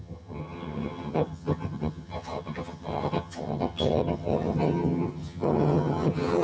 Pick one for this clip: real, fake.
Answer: fake